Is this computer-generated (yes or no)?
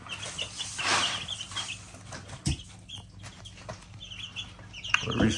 no